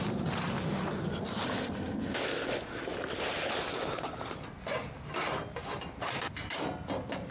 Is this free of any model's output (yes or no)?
no